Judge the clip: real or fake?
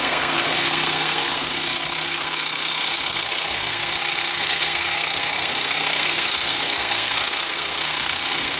fake